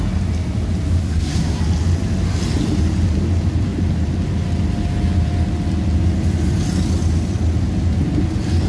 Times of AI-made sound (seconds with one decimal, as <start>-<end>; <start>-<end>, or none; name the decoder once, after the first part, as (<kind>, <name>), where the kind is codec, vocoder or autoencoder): 1.0-1.6 (codec, SNAC)